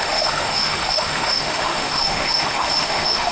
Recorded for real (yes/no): no